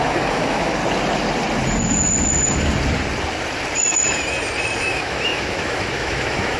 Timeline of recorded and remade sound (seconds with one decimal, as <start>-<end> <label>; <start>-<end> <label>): 0.0-0.8 remade; 0.8-4.8 recorded; 4.8-6.6 remade